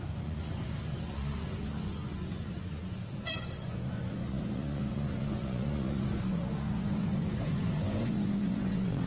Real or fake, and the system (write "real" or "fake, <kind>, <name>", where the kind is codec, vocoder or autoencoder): fake, vocoder, Vocos